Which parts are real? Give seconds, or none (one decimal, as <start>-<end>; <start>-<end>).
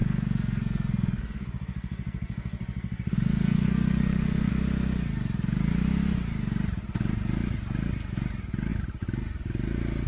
4.5-10.1